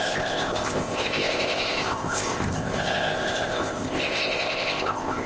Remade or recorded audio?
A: remade